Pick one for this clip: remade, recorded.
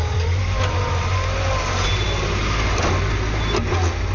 recorded